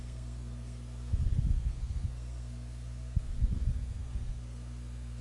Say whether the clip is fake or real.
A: fake